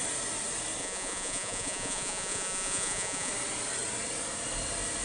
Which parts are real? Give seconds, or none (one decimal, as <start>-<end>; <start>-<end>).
0.0-0.8; 3.3-5.0